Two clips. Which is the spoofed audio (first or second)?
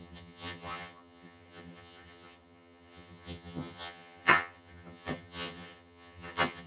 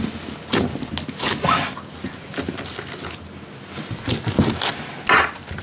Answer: first